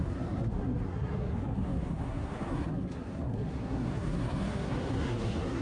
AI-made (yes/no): yes